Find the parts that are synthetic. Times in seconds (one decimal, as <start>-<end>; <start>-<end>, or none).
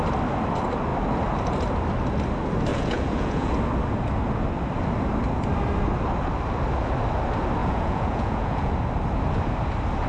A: 2.7-3.5; 7.6-8.7